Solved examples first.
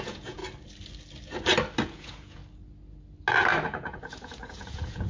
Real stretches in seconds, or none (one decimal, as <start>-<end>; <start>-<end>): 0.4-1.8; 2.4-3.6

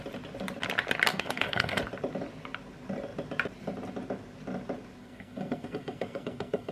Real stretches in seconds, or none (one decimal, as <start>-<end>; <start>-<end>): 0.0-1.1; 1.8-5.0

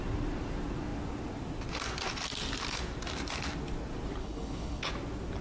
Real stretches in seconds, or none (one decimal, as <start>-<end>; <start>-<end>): 0.0-4.2; 4.8-5.4